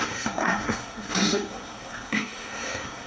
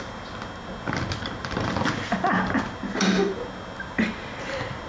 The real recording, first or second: second